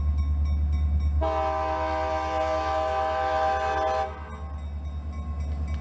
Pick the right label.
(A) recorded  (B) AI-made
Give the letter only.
A